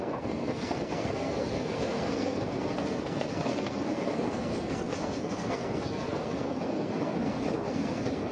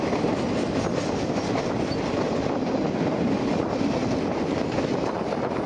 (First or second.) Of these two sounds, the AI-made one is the first